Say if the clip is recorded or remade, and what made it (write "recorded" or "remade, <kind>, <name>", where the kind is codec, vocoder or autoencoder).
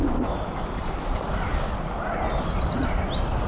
recorded